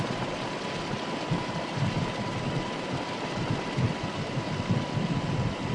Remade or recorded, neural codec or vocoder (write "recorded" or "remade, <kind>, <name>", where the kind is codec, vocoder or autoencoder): remade, vocoder, BigVGAN v2